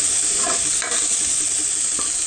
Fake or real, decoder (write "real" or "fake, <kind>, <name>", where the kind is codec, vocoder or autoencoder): real